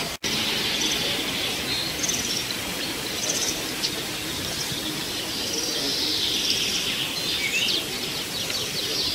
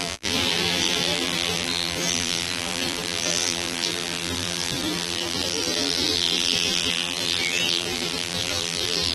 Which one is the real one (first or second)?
first